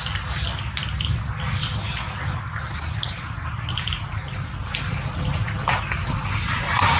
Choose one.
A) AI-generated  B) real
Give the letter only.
B